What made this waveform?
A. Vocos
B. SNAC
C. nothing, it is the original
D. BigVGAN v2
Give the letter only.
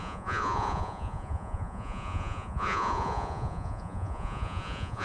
A